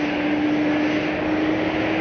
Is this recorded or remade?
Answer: recorded